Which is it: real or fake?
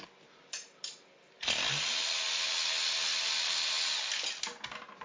real